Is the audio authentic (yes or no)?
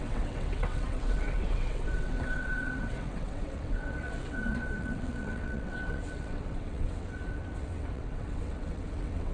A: no